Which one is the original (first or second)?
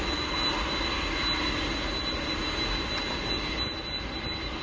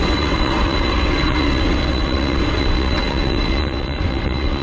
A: first